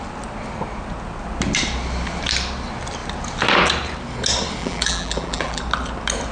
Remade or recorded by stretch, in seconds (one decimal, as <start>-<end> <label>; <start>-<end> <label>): 0.0-4.6 recorded; 4.6-5.6 remade; 5.6-6.3 recorded